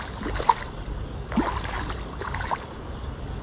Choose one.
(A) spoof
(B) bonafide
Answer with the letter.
B